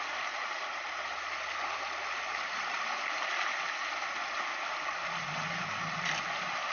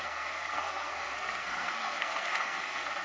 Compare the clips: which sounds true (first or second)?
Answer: first